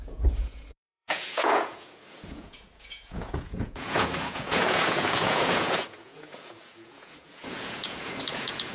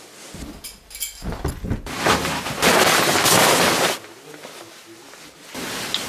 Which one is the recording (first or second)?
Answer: second